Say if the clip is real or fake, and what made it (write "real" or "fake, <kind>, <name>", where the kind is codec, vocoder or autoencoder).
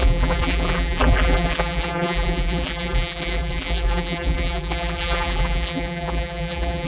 fake, vocoder, BigVGAN v2